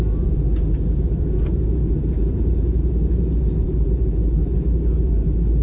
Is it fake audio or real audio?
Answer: fake